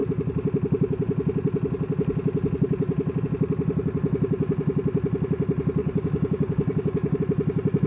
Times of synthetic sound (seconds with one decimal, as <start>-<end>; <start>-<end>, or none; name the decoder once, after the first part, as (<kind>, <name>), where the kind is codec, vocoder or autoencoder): 5.8-7.2 (codec, DAC)